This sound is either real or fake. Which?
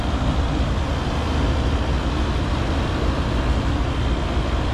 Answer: real